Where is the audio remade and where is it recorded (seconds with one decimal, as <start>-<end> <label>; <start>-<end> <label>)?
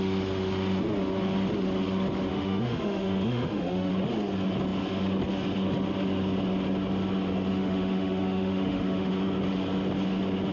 0.0-2.3 recorded; 2.3-3.9 remade; 3.9-7.5 recorded; 7.5-9.1 remade; 9.1-10.5 recorded